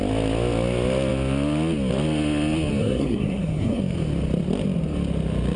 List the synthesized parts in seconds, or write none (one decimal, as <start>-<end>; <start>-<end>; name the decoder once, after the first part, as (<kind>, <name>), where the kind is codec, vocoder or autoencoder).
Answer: 2.8-3.8 (codec, SNAC)